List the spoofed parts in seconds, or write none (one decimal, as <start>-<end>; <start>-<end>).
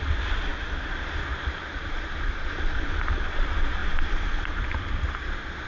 none